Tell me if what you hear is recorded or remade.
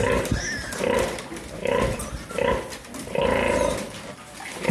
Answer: recorded